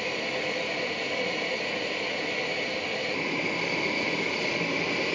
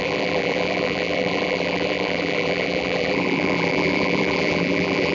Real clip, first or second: first